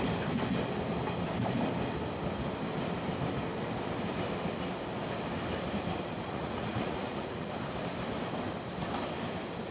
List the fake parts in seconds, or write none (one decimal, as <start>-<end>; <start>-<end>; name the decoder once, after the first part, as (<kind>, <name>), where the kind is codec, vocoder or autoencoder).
6.1-7.5 (vocoder, Vocos)